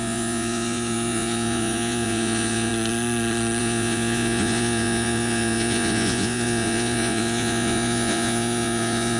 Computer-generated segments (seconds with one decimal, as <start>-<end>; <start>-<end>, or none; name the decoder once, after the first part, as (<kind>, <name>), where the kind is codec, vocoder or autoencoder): 0.0-2.7 (vocoder, Vocos); 3.6-9.2

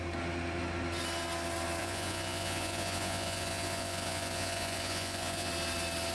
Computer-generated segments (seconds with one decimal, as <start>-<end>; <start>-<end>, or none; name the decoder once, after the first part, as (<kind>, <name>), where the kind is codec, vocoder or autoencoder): 1.8-5.5 (vocoder, Vocos)

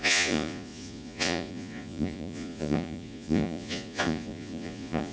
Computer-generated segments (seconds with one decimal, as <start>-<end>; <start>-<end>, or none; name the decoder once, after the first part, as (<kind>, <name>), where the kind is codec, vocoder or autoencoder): 0.0-5.1 (vocoder, Vocos)

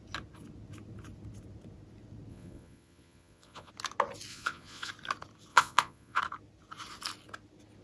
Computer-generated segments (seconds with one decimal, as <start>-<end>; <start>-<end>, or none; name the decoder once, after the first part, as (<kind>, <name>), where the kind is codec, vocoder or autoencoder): 2.3-3.7 (vocoder, Vocos); 4.3-4.9; 5.5-6.2

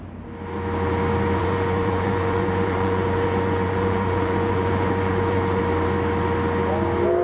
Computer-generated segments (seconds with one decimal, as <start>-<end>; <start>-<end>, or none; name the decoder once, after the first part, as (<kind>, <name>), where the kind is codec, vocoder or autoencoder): 1.4-5.6 (vocoder, Vocos)

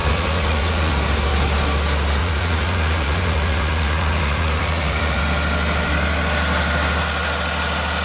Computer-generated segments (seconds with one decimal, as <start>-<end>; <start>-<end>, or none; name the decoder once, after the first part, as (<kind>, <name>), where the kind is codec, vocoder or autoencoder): 0.0-0.9 (vocoder, Vocos); 2.2-5.2

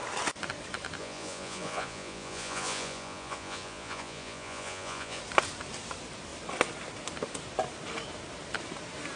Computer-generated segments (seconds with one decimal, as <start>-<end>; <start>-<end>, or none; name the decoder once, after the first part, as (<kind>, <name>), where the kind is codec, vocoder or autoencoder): 1.0-5.2 (vocoder, Vocos)